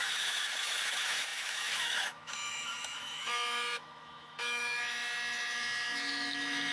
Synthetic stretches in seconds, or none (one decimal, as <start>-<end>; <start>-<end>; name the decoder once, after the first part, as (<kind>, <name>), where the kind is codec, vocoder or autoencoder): 0.0-6.7 (autoencoder, DAC-VAE)